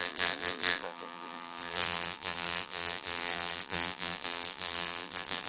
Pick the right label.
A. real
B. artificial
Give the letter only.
B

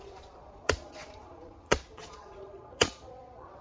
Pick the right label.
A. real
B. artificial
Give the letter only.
B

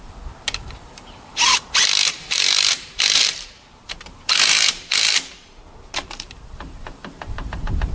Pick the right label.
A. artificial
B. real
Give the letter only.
A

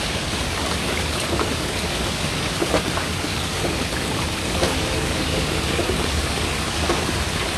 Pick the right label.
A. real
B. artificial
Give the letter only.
B